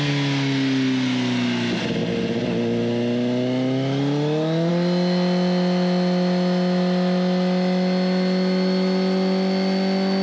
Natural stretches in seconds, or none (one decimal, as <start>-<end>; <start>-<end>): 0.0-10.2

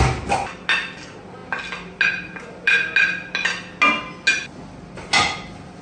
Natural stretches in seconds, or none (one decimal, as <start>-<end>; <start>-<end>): 0.0-5.8

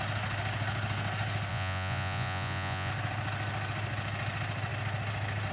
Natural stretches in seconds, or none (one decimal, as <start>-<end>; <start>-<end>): 0.0-1.5; 2.9-5.5

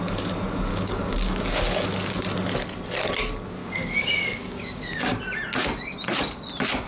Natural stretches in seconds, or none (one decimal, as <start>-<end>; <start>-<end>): 0.0-0.7; 1.4-3.6; 5.2-6.9

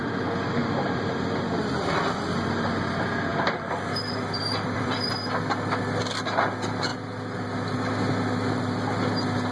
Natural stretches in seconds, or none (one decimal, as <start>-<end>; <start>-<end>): 0.0-0.6; 1.2-3.3; 5.1-9.5

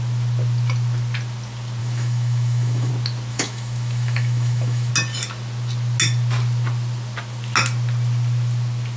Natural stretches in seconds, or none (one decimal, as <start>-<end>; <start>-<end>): 0.0-1.8; 2.9-3.3; 4.9-9.0

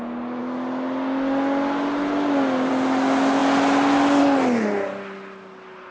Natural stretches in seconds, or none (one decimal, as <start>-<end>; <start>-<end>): 0.0-5.9